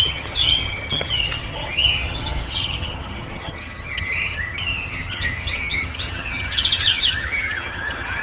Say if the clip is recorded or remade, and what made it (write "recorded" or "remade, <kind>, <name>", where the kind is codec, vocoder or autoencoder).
remade, vocoder, HiFi-GAN